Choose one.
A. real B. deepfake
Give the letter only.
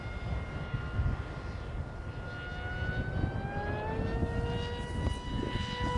A